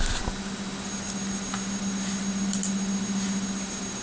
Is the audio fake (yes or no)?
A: no